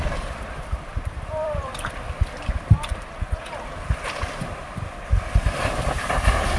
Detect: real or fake fake